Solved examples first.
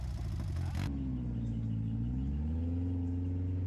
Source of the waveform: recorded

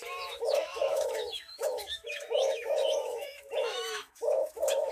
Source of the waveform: remade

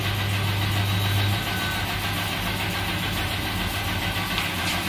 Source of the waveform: recorded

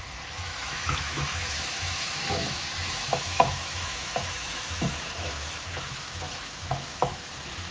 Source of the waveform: remade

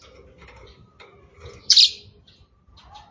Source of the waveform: recorded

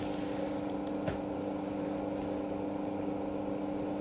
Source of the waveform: recorded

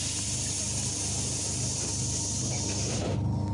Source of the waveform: recorded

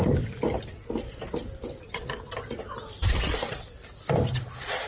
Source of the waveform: recorded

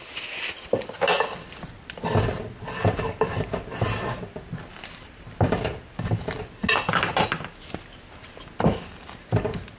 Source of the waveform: recorded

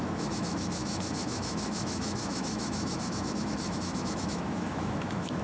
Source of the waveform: remade